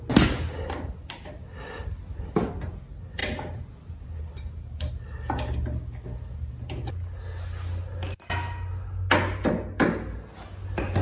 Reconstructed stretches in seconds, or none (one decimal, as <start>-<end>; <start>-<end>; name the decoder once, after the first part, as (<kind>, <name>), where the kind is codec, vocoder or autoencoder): none